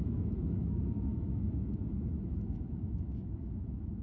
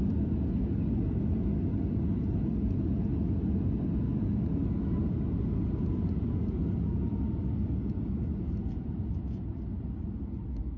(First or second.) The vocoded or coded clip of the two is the first